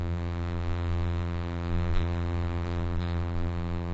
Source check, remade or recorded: remade